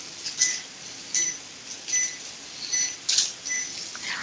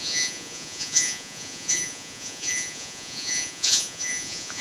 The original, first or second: first